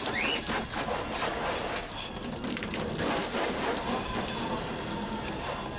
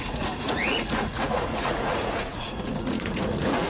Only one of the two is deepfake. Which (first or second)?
second